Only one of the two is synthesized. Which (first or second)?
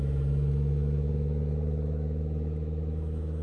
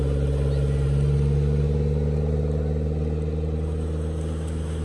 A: first